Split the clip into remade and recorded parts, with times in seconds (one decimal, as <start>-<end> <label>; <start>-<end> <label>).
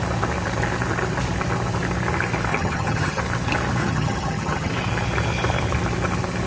0.0-2.5 recorded; 2.5-3.2 remade; 3.2-3.8 recorded; 3.8-4.7 remade; 4.7-6.5 recorded